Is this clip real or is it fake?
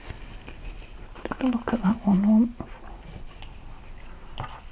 real